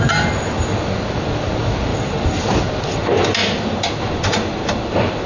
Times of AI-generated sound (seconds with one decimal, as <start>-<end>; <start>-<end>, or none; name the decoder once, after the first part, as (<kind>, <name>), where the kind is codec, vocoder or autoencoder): none